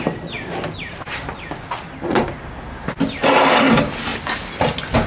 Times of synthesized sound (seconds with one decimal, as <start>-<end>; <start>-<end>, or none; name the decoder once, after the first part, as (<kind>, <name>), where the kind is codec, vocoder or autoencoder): none